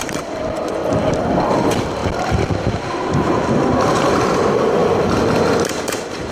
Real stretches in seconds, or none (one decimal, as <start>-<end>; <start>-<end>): 0.8-1.5; 4.8-5.6